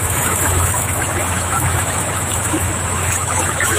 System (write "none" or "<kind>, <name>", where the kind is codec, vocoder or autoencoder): autoencoder, DAC-VAE